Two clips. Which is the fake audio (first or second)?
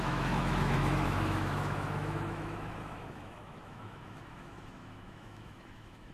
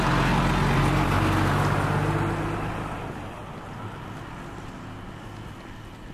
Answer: first